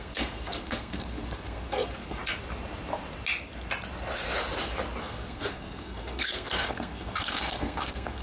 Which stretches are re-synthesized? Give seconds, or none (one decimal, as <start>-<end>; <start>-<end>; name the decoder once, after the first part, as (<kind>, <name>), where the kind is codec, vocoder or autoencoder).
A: 0.0-2.2 (codec, SNAC); 5.0-8.2